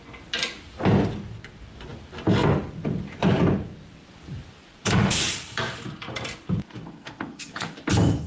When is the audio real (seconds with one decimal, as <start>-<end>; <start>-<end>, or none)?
0.0-6.6; 7.8-8.3